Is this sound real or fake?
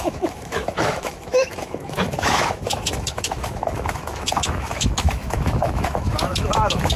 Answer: fake